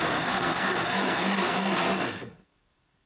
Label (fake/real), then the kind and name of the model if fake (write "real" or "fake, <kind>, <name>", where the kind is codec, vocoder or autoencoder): fake, codec, SNAC